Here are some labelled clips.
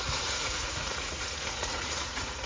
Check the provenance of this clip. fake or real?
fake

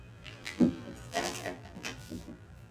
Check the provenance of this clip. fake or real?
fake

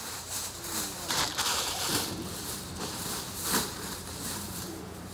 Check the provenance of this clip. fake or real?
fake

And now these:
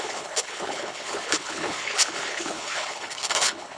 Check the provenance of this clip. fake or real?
fake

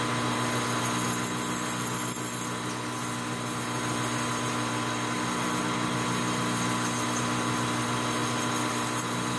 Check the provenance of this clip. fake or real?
real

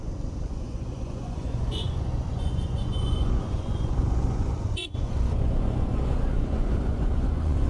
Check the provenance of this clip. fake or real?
fake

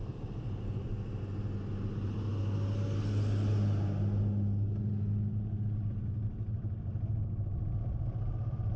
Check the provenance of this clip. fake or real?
real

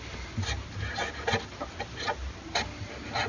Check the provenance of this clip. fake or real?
real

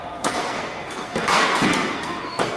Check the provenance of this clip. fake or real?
fake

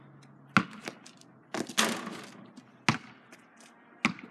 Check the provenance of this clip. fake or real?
real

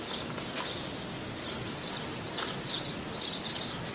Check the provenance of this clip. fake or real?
real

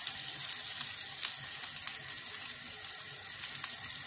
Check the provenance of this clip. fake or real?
real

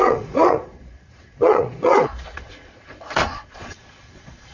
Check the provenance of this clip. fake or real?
fake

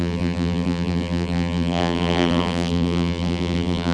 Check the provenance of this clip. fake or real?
fake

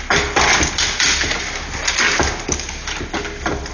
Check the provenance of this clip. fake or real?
real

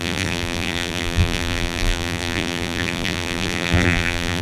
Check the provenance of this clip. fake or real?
fake